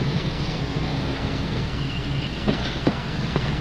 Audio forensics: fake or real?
fake